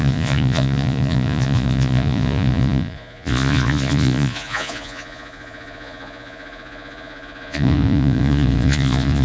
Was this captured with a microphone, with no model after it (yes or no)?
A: no